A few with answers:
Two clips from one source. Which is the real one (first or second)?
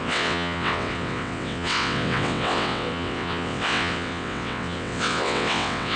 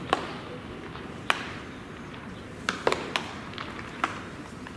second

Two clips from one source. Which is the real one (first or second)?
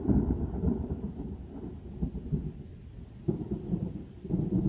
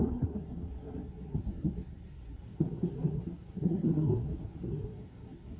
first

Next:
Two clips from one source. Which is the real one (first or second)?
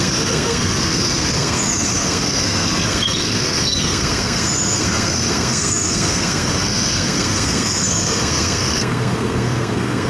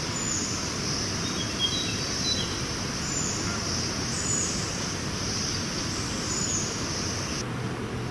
second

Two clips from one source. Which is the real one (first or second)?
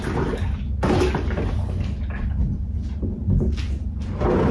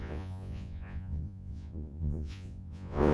first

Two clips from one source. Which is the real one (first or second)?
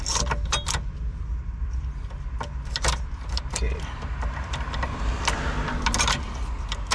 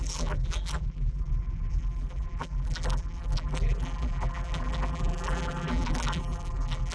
first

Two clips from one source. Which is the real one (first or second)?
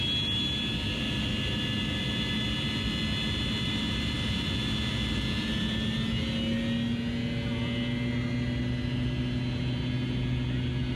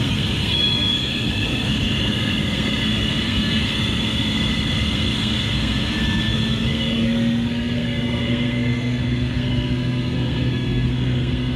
first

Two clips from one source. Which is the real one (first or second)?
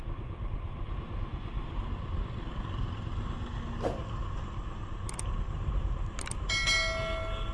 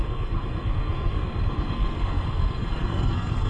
first